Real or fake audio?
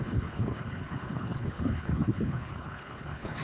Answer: fake